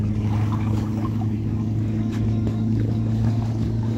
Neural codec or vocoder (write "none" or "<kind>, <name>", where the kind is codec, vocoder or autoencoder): codec, DAC